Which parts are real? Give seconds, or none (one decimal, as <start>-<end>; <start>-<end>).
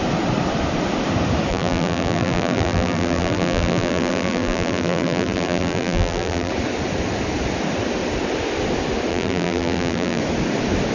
0.0-1.5; 6.5-9.1; 10.2-10.9